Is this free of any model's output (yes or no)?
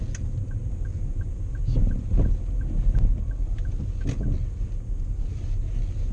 yes